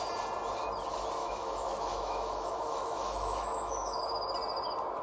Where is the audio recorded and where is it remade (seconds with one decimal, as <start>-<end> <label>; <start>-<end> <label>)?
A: 0.0-1.2 recorded; 1.2-4.0 remade; 4.0-5.0 recorded

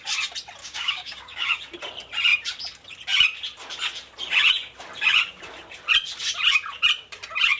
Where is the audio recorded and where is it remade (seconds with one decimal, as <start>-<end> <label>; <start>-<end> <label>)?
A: 0.0-0.6 recorded; 0.6-1.6 remade; 1.6-7.6 recorded

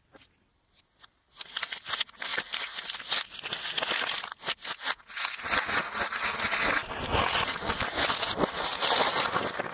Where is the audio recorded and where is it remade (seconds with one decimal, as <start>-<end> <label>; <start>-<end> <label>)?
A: 0.0-6.8 recorded; 6.8-7.7 remade; 7.7-9.7 recorded

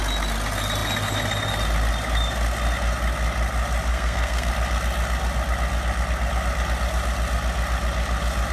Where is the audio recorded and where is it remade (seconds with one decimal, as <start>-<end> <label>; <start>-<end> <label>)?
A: 0.0-3.9 recorded; 3.9-4.5 remade; 4.5-8.5 recorded

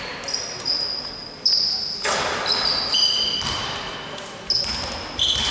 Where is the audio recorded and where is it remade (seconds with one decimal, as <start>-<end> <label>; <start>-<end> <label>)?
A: 0.0-5.5 recorded

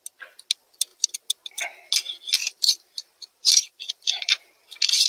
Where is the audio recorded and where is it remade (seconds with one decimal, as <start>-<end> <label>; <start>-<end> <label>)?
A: 0.0-2.4 recorded; 2.4-4.5 remade; 4.5-5.1 recorded

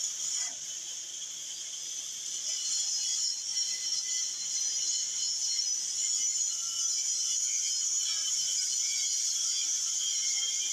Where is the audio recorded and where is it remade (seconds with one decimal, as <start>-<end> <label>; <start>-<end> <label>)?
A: 0.0-3.5 remade; 3.5-6.4 recorded; 6.4-7.3 remade; 7.3-10.7 recorded